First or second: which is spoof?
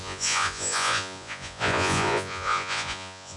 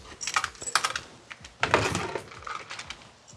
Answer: first